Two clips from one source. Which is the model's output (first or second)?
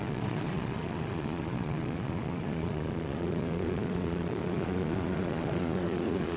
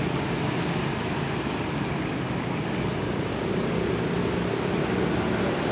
first